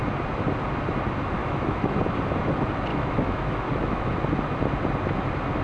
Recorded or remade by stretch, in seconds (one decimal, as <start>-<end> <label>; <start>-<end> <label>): 0.0-1.4 recorded; 1.4-2.0 remade; 2.0-2.9 recorded; 2.9-4.1 remade; 4.1-5.6 recorded

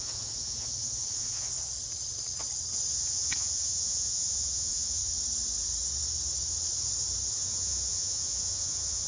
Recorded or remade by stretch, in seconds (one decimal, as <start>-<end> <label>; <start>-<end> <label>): 0.0-1.5 remade; 1.5-2.9 recorded; 2.9-5.0 remade; 5.0-7.3 recorded; 7.3-9.1 remade

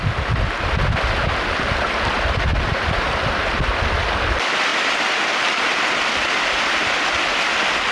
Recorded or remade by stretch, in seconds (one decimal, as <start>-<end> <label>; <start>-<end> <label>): 0.0-2.5 recorded; 2.5-3.8 remade; 3.8-4.7 recorded; 4.7-7.0 remade; 7.0-7.9 recorded